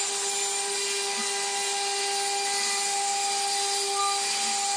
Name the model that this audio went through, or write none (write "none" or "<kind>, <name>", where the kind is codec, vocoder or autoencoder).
none